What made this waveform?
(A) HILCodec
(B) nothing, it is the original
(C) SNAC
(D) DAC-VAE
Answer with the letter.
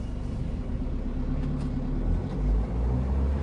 B